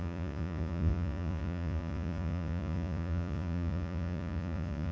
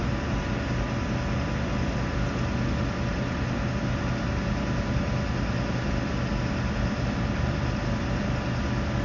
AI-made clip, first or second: first